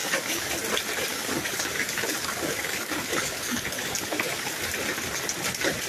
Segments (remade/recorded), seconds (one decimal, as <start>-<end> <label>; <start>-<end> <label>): 0.0-0.5 remade; 0.5-1.1 recorded; 1.1-4.6 remade; 4.6-5.9 recorded